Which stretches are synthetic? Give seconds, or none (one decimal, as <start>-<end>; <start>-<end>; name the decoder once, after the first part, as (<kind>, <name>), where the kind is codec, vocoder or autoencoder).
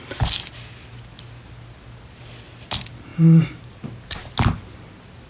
3.1-4.3 (vocoder, BigVGAN v2)